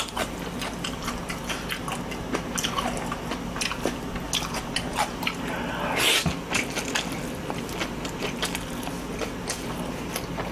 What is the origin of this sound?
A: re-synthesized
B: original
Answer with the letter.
B